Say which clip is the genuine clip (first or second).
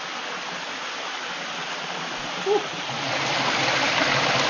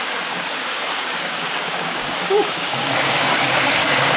first